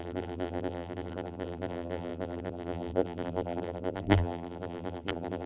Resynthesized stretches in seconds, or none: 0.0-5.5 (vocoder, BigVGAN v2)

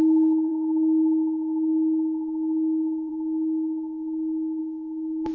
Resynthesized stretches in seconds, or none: 0.0-5.3 (autoencoder, DAC-VAE)

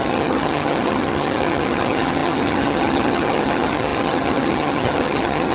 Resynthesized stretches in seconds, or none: 0.0-5.5 (vocoder, HiFi-GAN)